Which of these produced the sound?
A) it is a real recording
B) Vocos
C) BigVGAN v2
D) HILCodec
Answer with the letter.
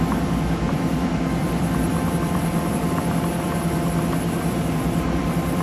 C